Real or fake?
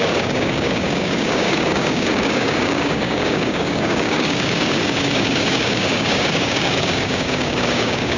fake